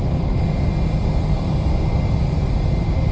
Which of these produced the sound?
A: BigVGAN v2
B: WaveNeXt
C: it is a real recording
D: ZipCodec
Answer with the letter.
C